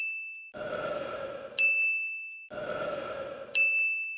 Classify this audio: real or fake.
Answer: real